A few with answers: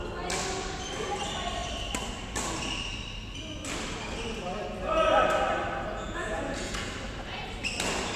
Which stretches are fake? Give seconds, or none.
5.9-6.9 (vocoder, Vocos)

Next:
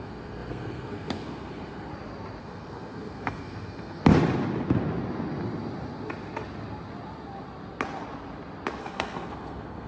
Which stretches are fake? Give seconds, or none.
0.0-1.9 (codec, SNAC); 2.4-4.0; 8.8-9.9

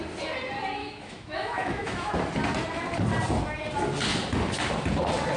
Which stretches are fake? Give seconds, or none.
0.8-2.1 (autoencoder, DAC-VAE)

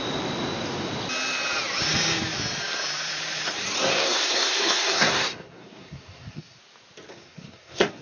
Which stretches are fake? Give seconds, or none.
3.9-6.6 (codec, SNAC); 7.1-8.0

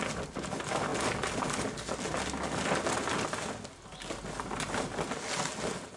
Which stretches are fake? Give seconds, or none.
none

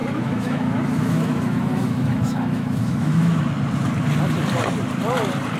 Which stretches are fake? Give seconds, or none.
0.0-3.4 (autoencoder, DAC-VAE)

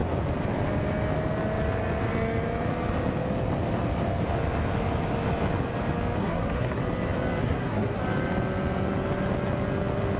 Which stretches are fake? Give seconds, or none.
6.2-6.8 (codec, SNAC); 7.4-8.0